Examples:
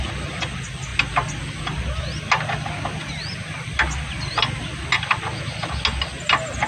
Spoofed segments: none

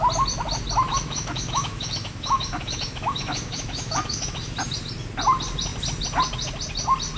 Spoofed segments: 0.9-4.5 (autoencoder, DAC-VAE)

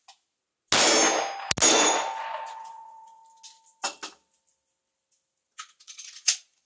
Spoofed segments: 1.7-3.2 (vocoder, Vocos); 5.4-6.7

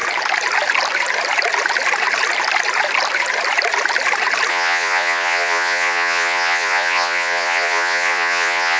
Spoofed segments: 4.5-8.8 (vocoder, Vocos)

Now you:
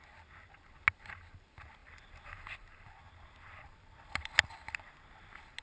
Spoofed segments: 1.8-5.6 (vocoder, BigVGAN v2)